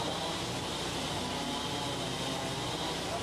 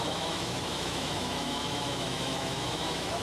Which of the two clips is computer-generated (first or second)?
second